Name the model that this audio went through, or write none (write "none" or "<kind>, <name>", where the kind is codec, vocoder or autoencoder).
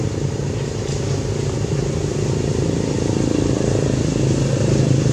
none